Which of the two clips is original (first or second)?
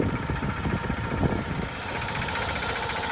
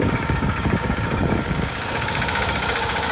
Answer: first